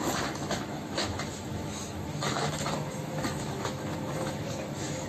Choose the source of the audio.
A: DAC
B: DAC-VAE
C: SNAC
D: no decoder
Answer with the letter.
B